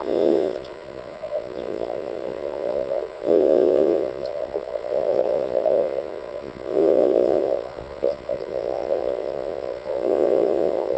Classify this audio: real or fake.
fake